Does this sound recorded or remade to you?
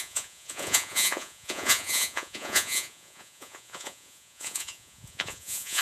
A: remade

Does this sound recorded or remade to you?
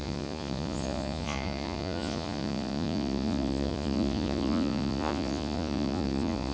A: remade